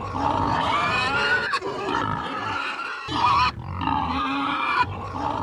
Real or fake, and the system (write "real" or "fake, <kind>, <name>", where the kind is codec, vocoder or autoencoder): fake, vocoder, BigVGAN v2